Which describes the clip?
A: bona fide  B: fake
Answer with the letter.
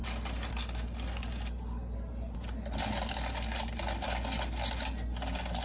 A